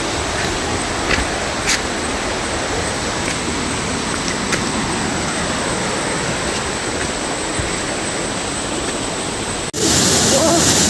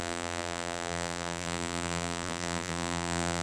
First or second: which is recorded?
first